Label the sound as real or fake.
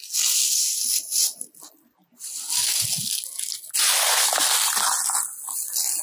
real